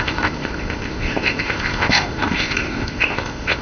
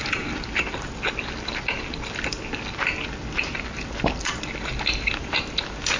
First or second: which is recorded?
second